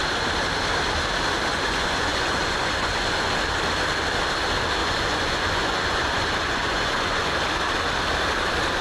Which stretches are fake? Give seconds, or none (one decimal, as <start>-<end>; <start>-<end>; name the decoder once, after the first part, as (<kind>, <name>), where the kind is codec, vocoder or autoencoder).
1.5-3.3 (vocoder, Vocos); 4.8-7.3